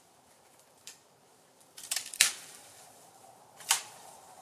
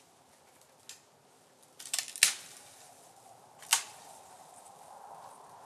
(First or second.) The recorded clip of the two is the second